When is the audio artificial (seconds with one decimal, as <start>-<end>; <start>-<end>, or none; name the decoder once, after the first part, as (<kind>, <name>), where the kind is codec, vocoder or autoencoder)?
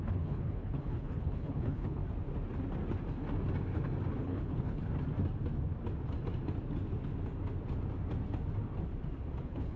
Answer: 0.0-2.0 (codec, HILCodec); 4.2-4.8; 9.4-9.8